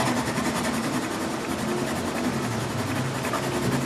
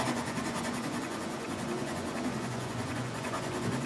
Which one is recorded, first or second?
first